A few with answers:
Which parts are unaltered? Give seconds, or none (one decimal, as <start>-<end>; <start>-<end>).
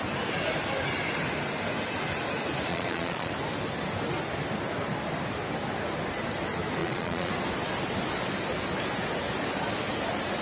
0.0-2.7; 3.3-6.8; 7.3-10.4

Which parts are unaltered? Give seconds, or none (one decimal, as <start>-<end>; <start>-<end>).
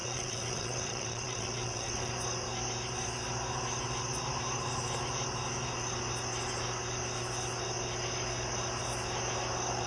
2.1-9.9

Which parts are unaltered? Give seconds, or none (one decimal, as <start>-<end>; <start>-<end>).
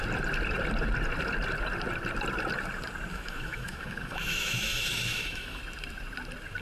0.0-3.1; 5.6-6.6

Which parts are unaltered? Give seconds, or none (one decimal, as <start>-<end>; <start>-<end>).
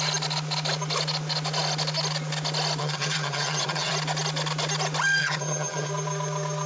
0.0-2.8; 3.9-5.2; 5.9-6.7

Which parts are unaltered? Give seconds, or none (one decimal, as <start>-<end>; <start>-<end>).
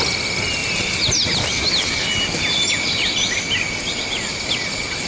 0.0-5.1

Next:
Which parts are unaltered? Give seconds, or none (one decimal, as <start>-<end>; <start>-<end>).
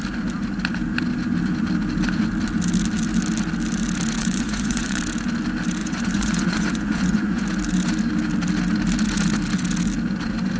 0.0-4.2; 5.0-5.8; 7.4-10.6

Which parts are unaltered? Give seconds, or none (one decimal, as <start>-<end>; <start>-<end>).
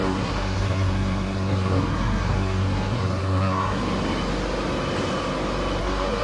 3.8-5.8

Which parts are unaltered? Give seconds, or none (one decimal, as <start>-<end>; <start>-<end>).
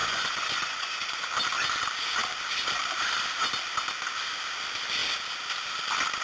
1.3-6.2